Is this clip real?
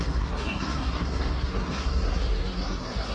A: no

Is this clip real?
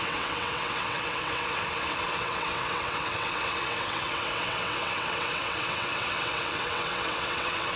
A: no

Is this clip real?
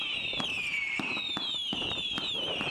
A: yes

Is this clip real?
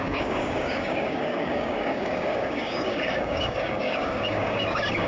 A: no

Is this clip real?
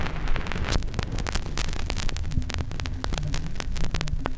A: yes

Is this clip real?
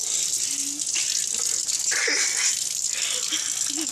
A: yes